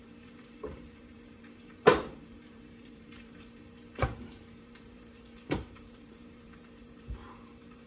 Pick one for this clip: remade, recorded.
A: remade